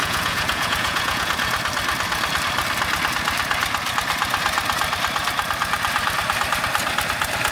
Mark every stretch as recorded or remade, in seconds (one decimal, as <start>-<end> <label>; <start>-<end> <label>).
0.0-1.3 remade; 1.3-7.5 recorded